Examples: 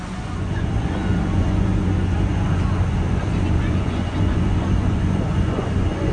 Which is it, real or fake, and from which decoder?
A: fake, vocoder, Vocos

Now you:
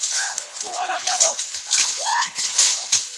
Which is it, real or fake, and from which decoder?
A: fake, codec, HILCodec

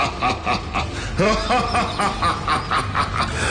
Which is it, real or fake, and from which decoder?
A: real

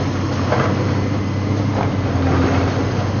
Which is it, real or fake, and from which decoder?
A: real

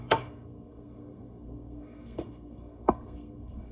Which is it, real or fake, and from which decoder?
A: fake, codec, SNAC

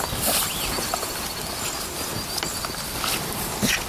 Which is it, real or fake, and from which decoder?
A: real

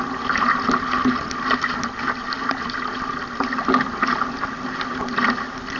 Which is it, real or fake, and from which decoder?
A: real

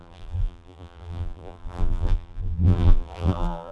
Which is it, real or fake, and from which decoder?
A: fake, vocoder, BigVGAN v2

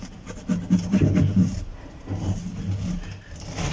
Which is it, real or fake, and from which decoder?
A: real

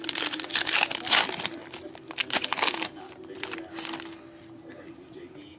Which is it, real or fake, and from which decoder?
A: real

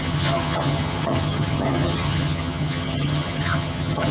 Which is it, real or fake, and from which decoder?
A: fake, vocoder, HiFi-GAN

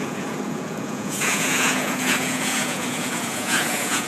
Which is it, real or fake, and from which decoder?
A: fake, vocoder, Vocos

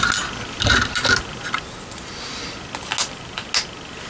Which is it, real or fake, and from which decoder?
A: real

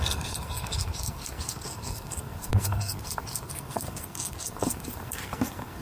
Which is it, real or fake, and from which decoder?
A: fake, codec, SNAC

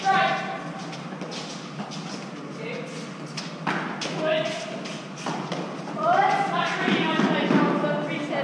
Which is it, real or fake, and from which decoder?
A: real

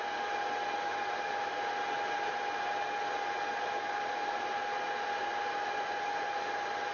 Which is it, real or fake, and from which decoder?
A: real